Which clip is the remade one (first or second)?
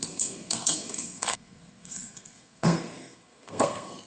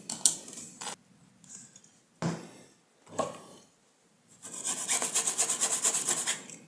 first